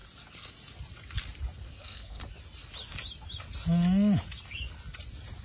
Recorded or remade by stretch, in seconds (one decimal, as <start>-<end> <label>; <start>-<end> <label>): 0.0-1.7 recorded; 1.7-2.2 remade; 2.2-5.4 recorded